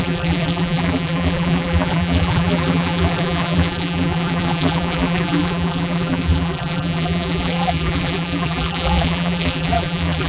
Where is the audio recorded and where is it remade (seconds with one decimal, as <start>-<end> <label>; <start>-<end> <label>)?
0.0-10.3 remade